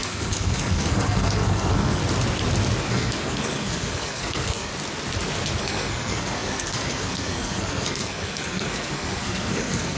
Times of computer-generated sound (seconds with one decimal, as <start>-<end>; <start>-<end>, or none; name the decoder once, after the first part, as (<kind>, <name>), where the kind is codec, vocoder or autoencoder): 0.0-2.0 (codec, SNAC); 2.9-4.7; 5.6-10.0